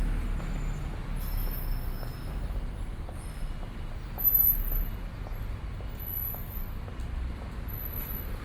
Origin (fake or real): real